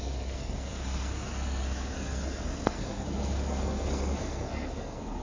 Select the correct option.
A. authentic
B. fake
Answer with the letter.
B